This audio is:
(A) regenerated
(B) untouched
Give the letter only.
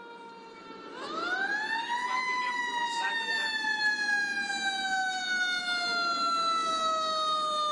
B